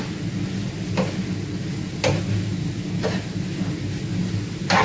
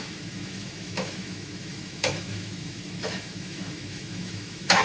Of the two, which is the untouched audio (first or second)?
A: first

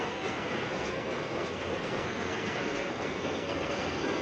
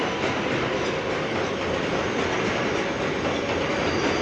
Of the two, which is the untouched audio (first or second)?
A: second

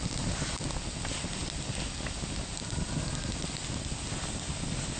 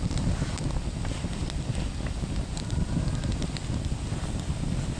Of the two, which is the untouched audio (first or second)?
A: first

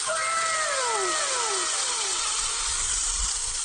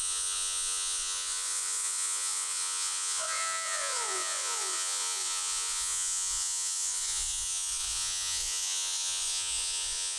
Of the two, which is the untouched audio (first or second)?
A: first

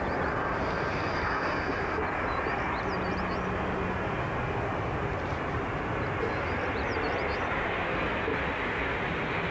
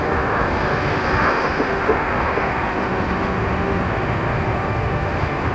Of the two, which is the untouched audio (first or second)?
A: first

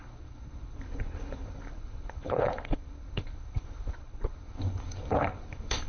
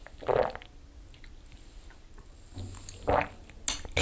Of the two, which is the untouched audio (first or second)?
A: second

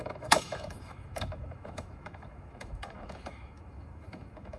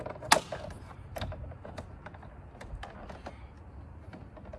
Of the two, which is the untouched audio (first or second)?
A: second